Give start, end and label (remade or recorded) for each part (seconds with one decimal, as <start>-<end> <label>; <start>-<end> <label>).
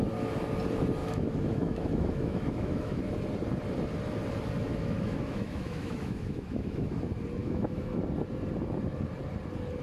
0.0-1.0 recorded; 1.0-3.0 remade; 3.0-4.7 recorded; 4.7-7.0 remade; 7.0-7.4 recorded; 7.4-8.0 remade; 8.0-9.8 recorded